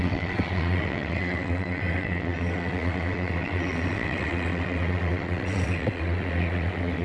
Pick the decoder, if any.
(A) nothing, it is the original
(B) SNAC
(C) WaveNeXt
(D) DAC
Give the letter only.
C